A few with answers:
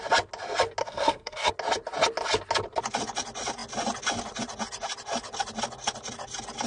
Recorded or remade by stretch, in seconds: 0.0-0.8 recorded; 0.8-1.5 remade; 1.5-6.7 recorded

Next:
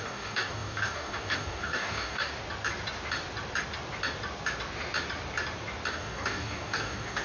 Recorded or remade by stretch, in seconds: 0.0-2.3 remade; 2.3-5.9 recorded; 5.9-7.2 remade

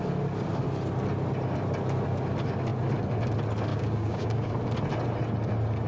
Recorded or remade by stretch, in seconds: 0.0-3.7 recorded; 3.7-4.5 remade; 4.5-5.9 recorded

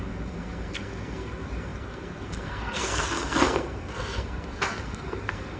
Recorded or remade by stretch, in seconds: 0.0-5.6 remade

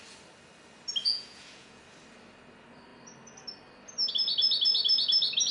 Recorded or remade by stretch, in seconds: 0.0-1.0 recorded; 1.0-1.8 remade; 1.8-5.5 recorded

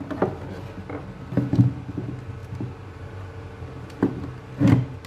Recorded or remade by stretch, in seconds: 0.0-5.1 recorded